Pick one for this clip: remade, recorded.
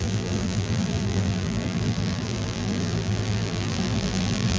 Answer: remade